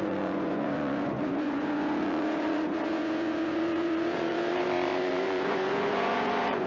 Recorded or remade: remade